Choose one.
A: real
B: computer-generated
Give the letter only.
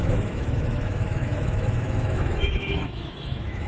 B